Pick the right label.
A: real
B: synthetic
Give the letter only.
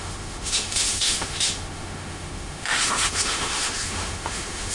B